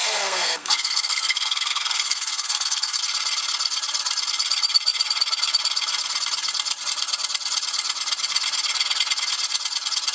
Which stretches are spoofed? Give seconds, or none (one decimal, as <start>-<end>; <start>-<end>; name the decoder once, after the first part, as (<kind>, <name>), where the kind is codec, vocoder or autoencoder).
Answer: 0.0-3.0 (codec, SNAC)